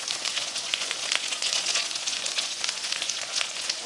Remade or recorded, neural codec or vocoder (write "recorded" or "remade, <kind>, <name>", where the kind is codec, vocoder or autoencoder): remade, vocoder, Vocos